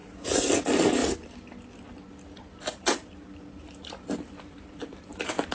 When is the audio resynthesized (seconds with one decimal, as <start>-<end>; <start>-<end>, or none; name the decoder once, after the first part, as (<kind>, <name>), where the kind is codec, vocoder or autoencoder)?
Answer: 0.6-1.0 (vocoder, BigVGAN v2); 4.3-5.5